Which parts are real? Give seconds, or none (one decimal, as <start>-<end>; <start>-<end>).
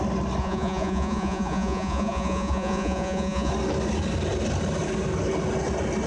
0.0-0.4; 3.5-6.1